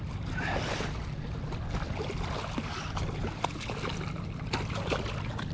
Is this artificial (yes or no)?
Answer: no